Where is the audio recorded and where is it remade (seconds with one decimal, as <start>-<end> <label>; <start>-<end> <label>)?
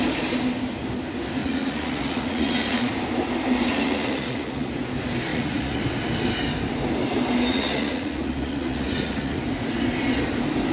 0.0-1.4 recorded; 1.4-2.9 remade; 2.9-3.7 recorded; 3.7-4.7 remade; 4.7-5.3 recorded; 5.3-5.8 remade; 5.8-7.5 recorded; 7.5-9.4 remade; 9.4-10.7 recorded